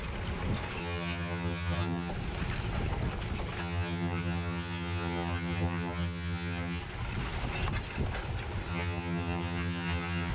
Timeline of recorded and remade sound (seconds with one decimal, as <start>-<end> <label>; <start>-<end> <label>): 0.0-0.8 recorded; 0.8-2.1 remade; 2.1-3.6 recorded; 3.6-6.8 remade; 6.8-8.7 recorded; 8.7-10.3 remade